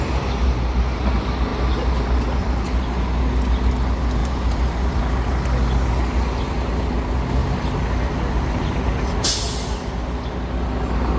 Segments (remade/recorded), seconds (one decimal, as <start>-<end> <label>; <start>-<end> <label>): 0.0-4.2 recorded; 4.2-5.0 remade; 5.0-7.4 recorded; 7.4-8.8 remade; 8.8-11.2 recorded